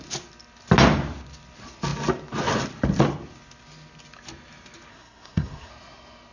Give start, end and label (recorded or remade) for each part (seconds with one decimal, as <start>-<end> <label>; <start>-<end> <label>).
0.0-4.9 recorded; 4.9-5.7 remade; 5.7-6.3 recorded